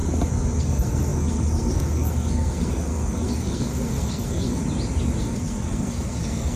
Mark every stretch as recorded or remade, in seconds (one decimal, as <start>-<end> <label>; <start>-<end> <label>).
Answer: 0.0-0.6 recorded; 0.6-4.6 remade; 4.6-5.2 recorded; 5.2-6.6 remade